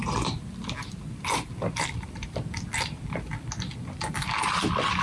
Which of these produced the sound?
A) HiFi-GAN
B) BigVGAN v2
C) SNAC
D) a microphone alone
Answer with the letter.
B